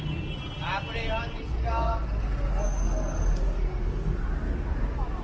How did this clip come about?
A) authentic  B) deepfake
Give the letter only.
A